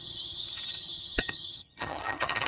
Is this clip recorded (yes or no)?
no